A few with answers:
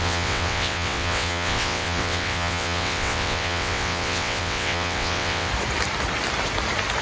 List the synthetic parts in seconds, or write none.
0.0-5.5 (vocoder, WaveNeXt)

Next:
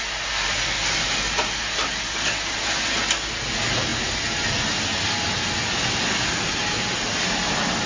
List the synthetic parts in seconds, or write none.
none